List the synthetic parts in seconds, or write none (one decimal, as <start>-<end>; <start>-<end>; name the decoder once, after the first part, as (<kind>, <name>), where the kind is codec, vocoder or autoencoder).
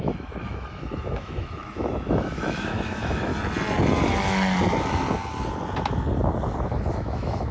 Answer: 0.0-3.3 (autoencoder, DAC-VAE); 6.9-7.5